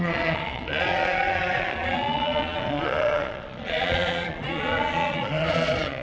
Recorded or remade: remade